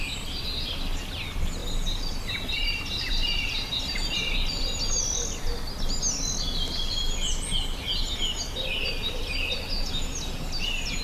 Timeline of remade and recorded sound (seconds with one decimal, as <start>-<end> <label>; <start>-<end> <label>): 0.0-11.0 recorded